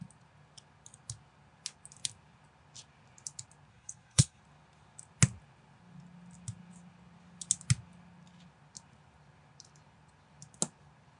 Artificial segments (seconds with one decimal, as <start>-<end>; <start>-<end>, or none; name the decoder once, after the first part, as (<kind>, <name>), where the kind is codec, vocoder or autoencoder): 3.7-4.4 (codec, SNAC)

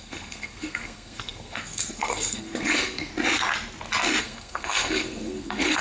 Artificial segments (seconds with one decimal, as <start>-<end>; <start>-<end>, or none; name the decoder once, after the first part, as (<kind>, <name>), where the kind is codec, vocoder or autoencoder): 0.0-3.1 (codec, SNAC); 4.2-5.8

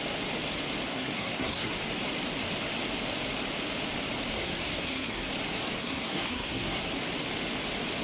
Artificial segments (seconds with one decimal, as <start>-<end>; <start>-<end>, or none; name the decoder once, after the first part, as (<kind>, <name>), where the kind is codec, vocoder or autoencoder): 0.9-1.7 (codec, SNAC); 4.3-5.3; 5.8-6.9

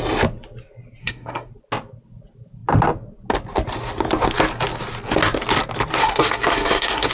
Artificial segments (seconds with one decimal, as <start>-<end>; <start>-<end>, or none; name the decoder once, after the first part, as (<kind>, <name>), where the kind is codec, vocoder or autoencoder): 1.0-1.5 (codec, SNAC); 6.0-7.1

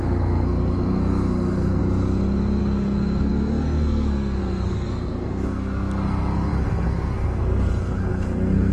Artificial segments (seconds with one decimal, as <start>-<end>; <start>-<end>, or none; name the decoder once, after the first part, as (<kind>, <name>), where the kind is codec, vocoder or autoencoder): 0.0-1.8 (codec, SNAC); 2.6-8.7